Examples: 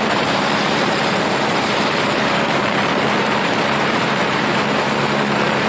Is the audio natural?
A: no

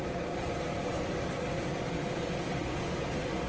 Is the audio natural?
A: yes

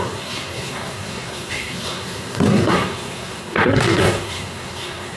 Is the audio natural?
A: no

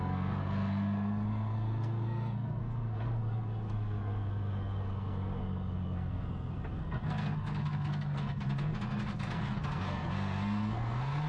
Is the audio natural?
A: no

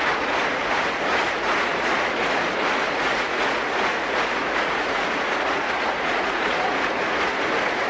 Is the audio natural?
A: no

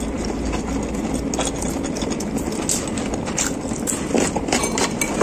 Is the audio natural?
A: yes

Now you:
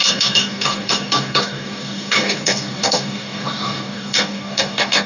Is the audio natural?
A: no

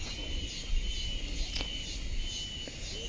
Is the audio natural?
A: yes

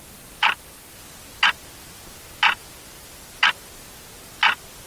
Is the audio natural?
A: yes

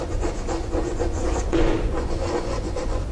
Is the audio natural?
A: no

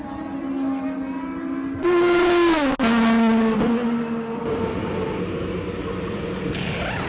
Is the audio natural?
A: yes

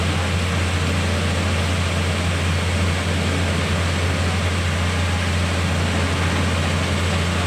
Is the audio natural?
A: yes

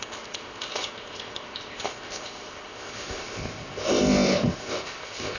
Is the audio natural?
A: no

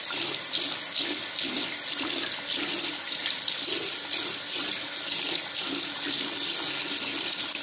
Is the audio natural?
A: yes